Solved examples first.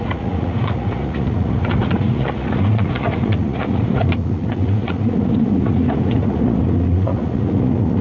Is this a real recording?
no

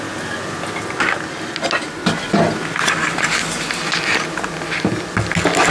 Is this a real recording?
yes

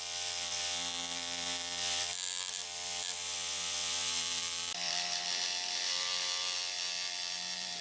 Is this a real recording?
no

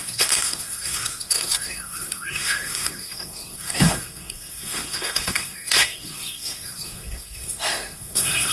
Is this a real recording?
no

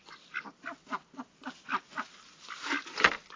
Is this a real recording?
yes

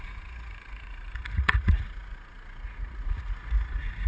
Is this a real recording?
no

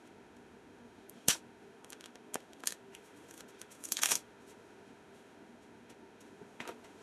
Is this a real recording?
no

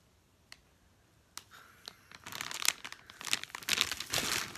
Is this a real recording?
yes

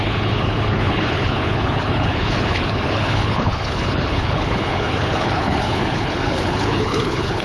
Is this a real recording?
no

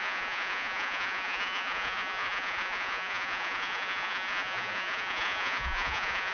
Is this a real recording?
no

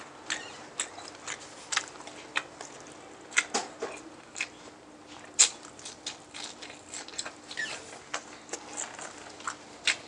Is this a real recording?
yes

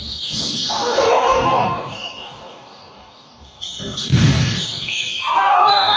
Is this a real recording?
no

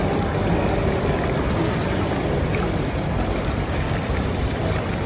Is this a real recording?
no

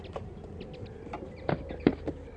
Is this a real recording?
yes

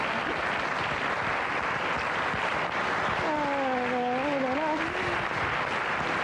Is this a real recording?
yes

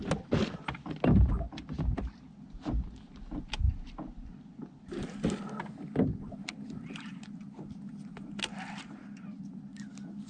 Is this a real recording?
yes